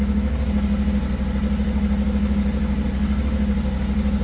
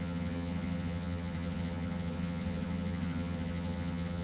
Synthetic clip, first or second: second